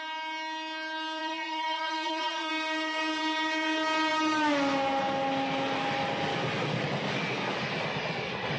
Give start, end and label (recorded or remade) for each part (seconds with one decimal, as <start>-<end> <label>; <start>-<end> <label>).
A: 0.0-1.2 recorded; 1.2-2.5 remade; 2.5-8.6 recorded